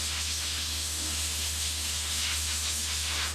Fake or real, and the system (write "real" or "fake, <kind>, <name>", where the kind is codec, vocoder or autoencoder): fake, autoencoder, DAC-VAE